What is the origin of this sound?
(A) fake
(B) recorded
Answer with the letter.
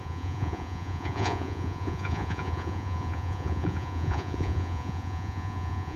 A